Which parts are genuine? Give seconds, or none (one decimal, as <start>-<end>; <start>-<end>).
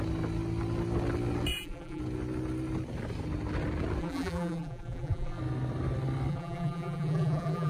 0.0-1.5; 2.0-4.0; 5.4-6.3